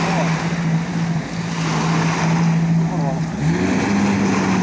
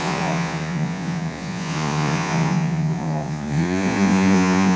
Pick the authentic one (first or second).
first